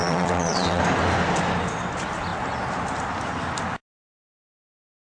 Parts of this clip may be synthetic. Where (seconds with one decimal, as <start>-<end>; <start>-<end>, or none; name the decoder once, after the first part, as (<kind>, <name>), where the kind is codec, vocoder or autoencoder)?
0.0-0.8 (vocoder, WaveNeXt)